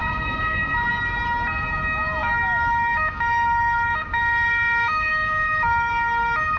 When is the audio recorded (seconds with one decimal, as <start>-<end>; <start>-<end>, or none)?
0.9-2.2; 5.9-6.6